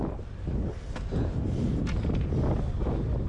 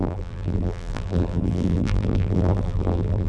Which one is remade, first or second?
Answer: second